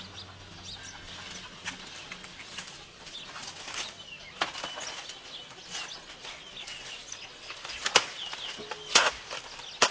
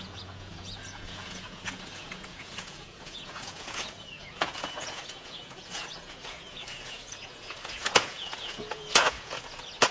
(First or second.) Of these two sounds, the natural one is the first